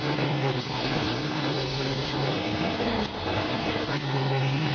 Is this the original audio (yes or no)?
no